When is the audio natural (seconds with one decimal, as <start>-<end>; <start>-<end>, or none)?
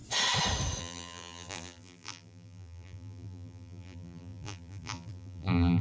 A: 0.0-0.8